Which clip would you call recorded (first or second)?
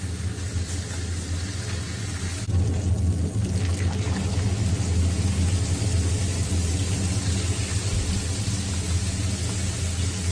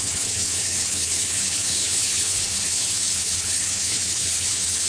first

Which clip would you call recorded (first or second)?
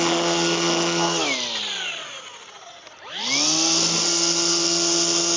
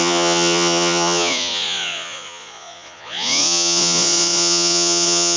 first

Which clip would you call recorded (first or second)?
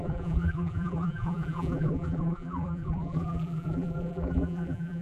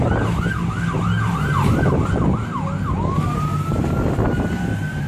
second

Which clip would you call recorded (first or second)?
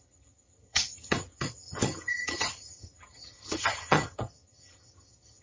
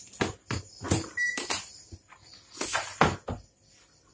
second